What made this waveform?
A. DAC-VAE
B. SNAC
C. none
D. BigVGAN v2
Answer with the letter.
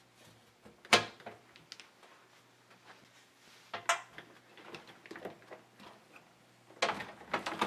C